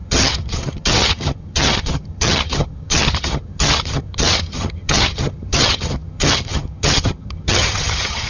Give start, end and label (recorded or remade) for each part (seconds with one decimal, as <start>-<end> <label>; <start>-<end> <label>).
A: 0.0-8.3 remade